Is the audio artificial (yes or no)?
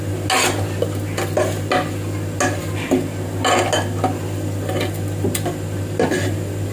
no